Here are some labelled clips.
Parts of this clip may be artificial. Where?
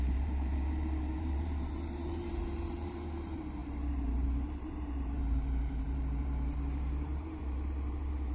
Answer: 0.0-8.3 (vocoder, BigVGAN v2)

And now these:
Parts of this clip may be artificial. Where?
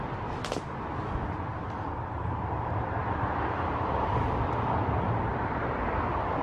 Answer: 1.5-2.0 (vocoder, BigVGAN v2); 3.0-4.2; 5.3-5.8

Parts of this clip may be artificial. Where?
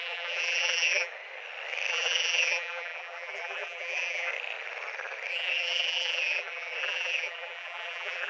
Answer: 0.0-1.1 (vocoder, BigVGAN v2); 1.9-4.3; 5.3-8.3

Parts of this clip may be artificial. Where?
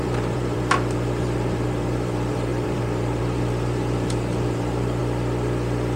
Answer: 0.0-5.0 (vocoder, BigVGAN v2)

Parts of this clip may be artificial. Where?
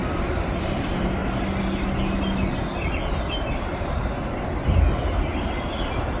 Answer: 0.0-1.2 (vocoder, BigVGAN v2); 4.9-6.2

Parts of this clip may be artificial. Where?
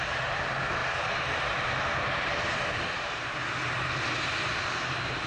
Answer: 0.0-5.3 (vocoder, BigVGAN v2)